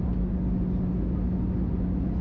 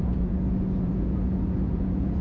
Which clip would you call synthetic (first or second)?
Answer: second